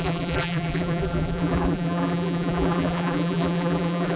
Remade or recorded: remade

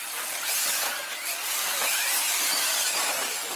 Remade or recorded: remade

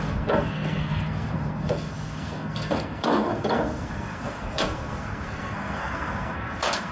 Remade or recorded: remade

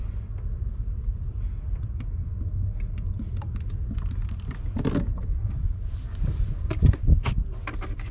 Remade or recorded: recorded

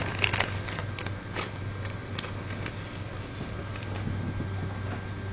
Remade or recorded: recorded